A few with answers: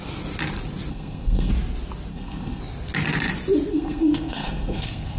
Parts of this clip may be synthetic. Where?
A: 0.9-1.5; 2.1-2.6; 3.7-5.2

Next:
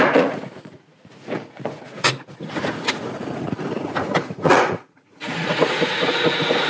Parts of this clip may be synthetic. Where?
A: 0.0-6.7

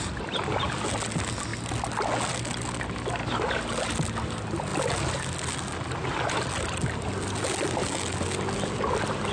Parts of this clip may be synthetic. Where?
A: none

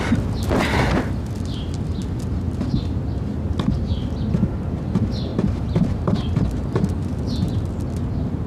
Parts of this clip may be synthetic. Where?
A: 5.3-6.2

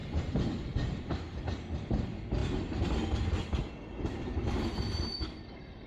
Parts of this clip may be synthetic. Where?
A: 0.0-1.4

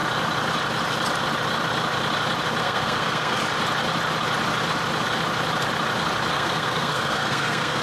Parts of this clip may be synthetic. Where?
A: 2.6-3.4; 6.3-7.8

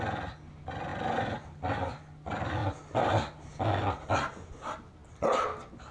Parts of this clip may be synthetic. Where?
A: none